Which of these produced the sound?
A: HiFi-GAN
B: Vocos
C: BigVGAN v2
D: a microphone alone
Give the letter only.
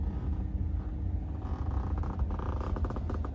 D